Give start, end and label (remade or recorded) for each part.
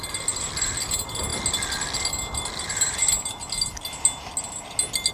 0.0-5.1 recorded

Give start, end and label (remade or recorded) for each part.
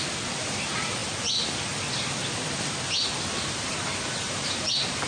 0.0-5.1 recorded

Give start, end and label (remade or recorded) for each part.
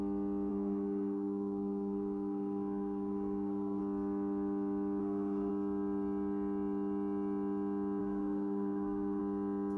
0.0-0.5 recorded; 0.5-3.8 remade; 3.8-5.0 recorded; 5.0-5.5 remade; 5.5-8.0 recorded; 8.0-9.2 remade; 9.2-9.8 recorded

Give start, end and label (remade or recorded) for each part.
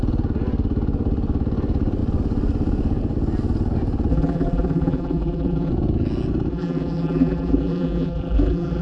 0.0-4.1 recorded; 4.1-5.7 remade; 5.7-6.5 recorded; 6.5-8.8 remade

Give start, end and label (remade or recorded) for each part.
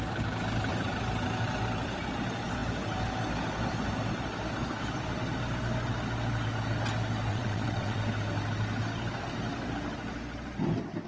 0.0-7.3 recorded; 7.3-8.0 remade; 8.0-11.1 recorded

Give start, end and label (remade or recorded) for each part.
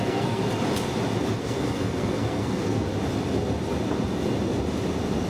0.0-0.4 remade; 0.4-1.4 recorded; 1.4-2.9 remade; 2.9-5.3 recorded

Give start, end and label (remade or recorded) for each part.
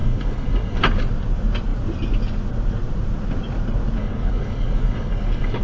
0.0-0.8 remade; 0.8-4.0 recorded; 4.0-5.6 remade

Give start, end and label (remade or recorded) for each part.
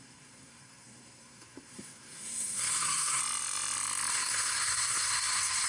0.0-3.2 remade; 3.2-4.1 recorded; 4.1-5.7 remade